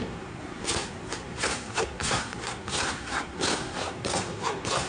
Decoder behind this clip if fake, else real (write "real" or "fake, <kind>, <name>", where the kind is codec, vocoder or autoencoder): fake, codec, SNAC